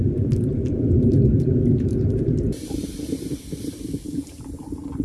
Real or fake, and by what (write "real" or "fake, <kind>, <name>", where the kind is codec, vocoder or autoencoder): fake, vocoder, BigVGAN v2